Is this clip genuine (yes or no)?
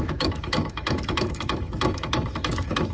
no